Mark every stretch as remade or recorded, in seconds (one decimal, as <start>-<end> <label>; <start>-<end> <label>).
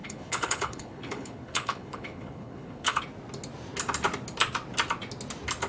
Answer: 0.0-3.0 remade; 3.0-5.7 recorded